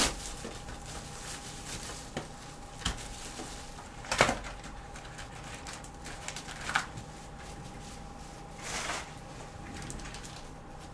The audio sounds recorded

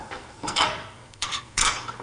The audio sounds remade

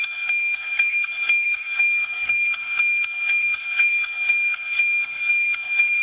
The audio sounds remade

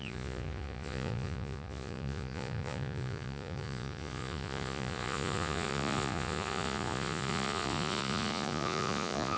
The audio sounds remade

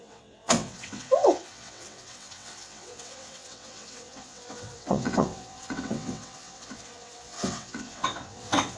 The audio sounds remade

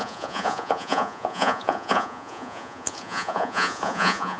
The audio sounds remade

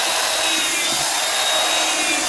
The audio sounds recorded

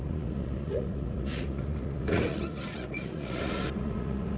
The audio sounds remade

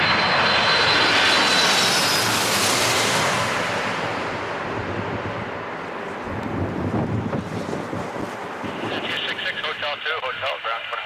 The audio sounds recorded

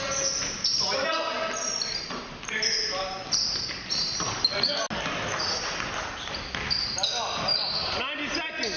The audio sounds recorded